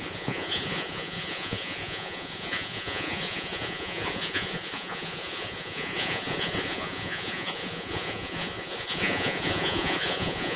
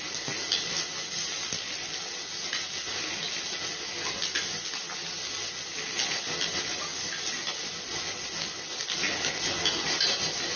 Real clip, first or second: second